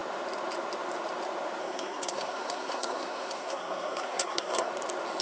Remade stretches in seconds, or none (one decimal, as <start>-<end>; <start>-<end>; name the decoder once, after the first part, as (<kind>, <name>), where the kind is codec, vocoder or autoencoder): 1.6-4.7 (codec, SNAC)